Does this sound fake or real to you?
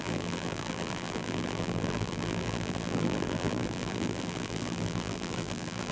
fake